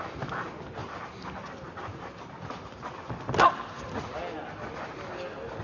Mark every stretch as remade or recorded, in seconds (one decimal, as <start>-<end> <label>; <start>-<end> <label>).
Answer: 0.0-5.6 recorded